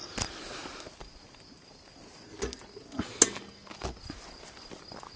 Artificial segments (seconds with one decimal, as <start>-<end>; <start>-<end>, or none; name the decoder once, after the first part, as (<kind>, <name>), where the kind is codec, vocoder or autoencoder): none